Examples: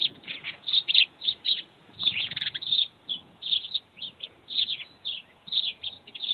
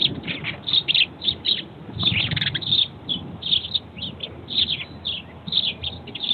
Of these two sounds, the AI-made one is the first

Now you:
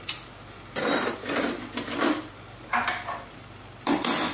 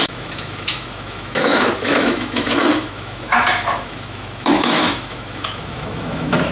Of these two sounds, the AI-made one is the second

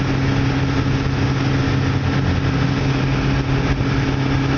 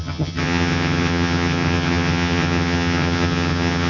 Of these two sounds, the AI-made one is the second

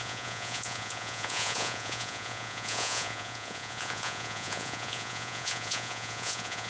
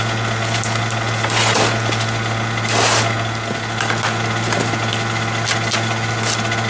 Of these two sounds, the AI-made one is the first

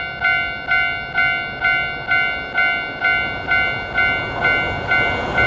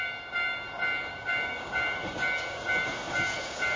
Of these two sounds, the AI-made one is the second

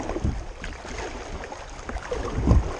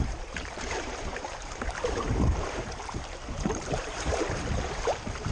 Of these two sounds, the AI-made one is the second